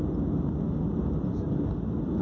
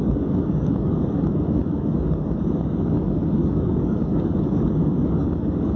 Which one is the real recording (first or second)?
first